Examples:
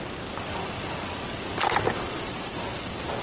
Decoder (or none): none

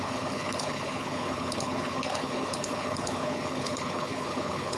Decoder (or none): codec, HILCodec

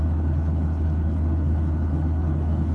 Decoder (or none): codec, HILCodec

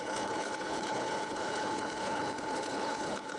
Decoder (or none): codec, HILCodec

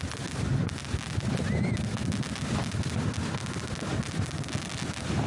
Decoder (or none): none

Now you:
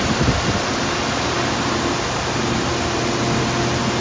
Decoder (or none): none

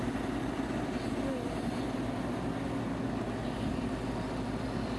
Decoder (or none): none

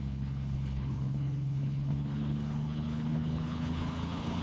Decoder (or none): codec, HILCodec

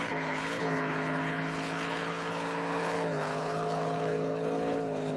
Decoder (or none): codec, HILCodec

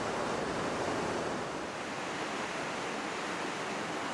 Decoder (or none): none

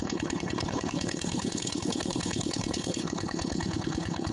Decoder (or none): codec, HILCodec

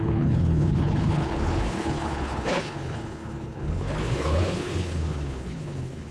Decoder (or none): codec, HILCodec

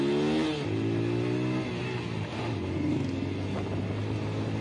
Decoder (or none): none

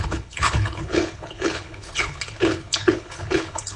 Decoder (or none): codec, HILCodec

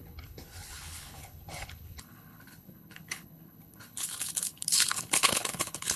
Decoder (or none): codec, HILCodec